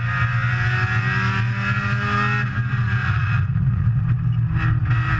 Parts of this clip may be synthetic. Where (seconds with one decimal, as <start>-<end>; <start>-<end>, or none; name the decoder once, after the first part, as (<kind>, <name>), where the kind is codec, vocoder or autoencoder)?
3.0-4.0 (vocoder, Vocos)